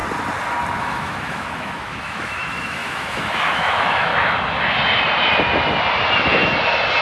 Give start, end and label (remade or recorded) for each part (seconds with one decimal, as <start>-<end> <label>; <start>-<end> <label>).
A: 0.0-0.8 recorded; 0.8-4.1 remade; 4.1-7.0 recorded